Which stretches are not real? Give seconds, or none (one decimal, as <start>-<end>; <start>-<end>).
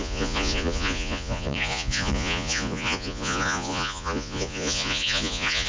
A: 0.0-5.7